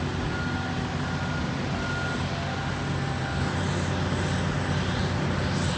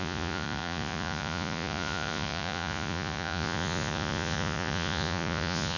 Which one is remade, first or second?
second